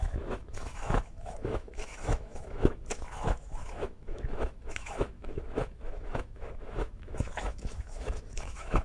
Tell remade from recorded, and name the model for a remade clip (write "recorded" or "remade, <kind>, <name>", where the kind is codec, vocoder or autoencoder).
remade, autoencoder, DAC-VAE